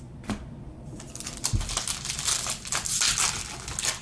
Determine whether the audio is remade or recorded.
recorded